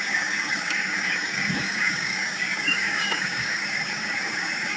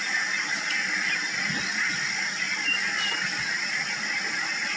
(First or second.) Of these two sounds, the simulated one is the first